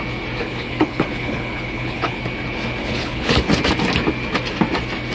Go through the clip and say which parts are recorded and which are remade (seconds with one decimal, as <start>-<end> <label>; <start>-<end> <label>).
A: 0.0-0.4 recorded; 0.4-2.2 remade; 2.2-2.8 recorded; 2.8-3.5 remade; 3.5-5.1 recorded